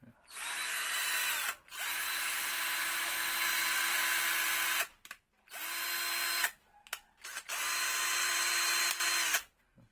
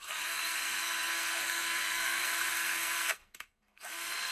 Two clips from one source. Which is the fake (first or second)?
second